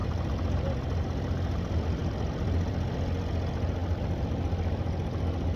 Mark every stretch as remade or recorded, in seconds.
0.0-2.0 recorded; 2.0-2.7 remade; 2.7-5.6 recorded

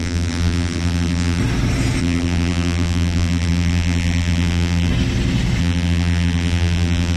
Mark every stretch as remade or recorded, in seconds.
0.0-1.4 remade; 1.4-2.0 recorded; 2.0-4.9 remade; 4.9-5.6 recorded; 5.6-7.2 remade

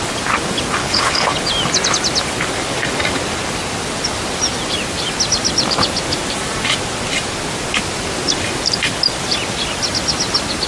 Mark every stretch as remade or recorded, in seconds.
0.0-0.8 recorded; 0.8-1.4 remade; 1.4-10.7 recorded

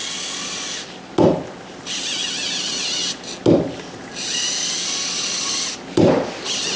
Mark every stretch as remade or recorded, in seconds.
0.0-6.8 recorded

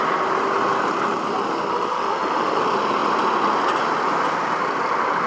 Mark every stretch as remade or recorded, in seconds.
0.0-1.7 recorded; 1.7-2.6 remade; 2.6-5.3 recorded